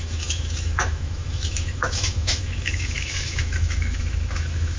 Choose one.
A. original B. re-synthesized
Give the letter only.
B